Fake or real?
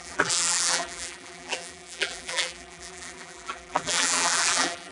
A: fake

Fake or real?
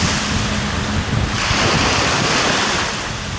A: real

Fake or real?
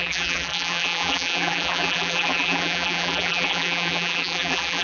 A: fake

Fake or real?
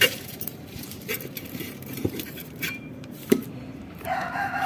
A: fake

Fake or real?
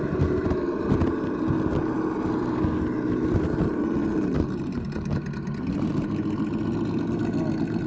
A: real